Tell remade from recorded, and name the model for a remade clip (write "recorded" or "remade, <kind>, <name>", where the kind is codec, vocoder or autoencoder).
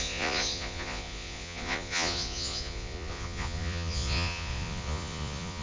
remade, vocoder, Vocos